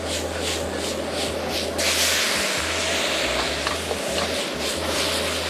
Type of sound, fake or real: real